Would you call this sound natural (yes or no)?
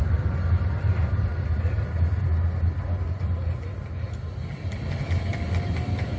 yes